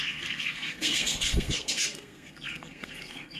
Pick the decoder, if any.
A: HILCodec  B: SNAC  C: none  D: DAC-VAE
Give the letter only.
B